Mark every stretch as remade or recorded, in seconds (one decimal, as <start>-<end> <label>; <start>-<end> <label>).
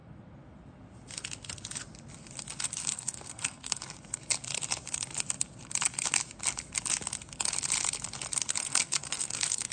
0.0-2.8 recorded; 2.8-3.8 remade; 3.8-8.6 recorded; 8.6-9.7 remade